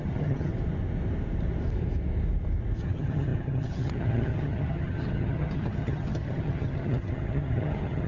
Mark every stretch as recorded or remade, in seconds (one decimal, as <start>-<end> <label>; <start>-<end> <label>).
0.0-0.5 remade; 0.5-2.8 recorded; 2.8-8.1 remade